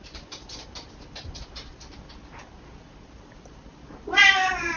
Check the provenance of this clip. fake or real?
real